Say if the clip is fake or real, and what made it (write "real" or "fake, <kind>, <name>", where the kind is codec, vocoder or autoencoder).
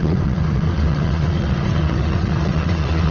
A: fake, vocoder, WaveNeXt